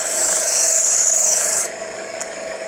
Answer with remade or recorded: remade